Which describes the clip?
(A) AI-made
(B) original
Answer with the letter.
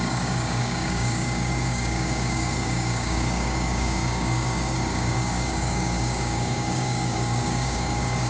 A